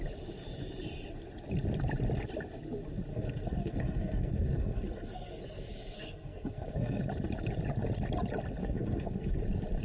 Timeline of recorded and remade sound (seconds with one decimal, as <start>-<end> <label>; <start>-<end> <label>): 0.0-3.1 recorded; 3.1-7.0 remade; 7.0-8.6 recorded; 8.6-9.4 remade; 9.4-9.8 recorded